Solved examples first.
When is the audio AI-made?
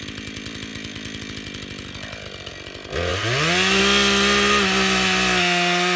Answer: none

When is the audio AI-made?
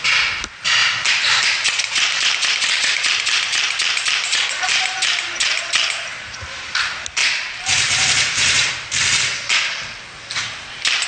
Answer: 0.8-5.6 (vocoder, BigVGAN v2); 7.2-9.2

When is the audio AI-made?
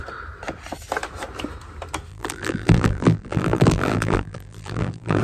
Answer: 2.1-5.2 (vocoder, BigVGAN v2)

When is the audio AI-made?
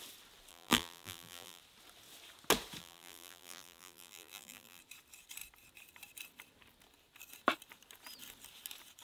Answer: 0.5-1.6 (vocoder, BigVGAN v2); 2.8-4.8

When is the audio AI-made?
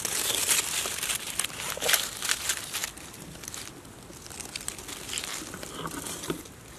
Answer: none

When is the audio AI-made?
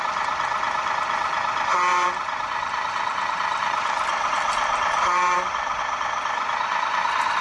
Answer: 1.9-5.8 (vocoder, BigVGAN v2)